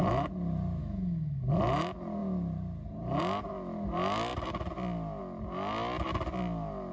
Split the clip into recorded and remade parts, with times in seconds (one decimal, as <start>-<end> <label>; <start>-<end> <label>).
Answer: 0.0-0.8 recorded; 0.8-1.5 remade; 1.5-6.9 recorded